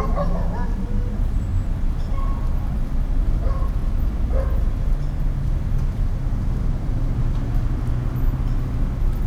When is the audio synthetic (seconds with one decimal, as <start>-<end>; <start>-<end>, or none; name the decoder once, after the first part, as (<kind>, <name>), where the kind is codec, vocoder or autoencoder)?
none